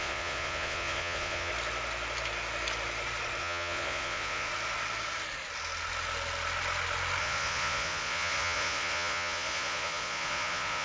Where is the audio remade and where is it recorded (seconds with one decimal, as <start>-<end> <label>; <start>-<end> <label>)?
0.0-1.5 remade; 1.5-3.4 recorded; 3.4-4.5 remade; 4.5-7.2 recorded; 7.2-10.8 remade